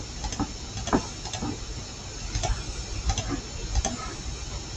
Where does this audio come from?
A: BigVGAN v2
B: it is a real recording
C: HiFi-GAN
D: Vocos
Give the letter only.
B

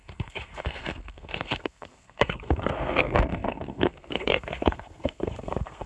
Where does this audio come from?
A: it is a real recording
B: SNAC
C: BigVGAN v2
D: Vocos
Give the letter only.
B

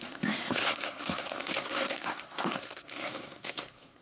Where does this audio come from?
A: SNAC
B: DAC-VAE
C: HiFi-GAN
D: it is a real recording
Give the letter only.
A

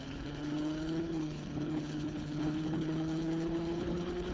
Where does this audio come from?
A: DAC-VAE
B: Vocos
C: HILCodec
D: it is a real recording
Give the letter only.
C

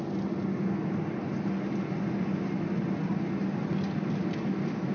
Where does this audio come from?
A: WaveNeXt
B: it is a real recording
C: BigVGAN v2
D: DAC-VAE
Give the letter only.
B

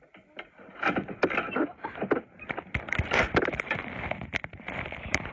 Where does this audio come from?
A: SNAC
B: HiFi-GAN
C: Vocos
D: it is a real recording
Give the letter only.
D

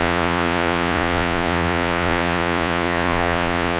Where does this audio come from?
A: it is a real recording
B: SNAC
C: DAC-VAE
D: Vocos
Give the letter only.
D